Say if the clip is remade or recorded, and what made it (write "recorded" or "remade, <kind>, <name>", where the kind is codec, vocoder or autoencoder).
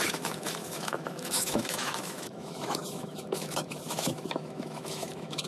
remade, autoencoder, DAC-VAE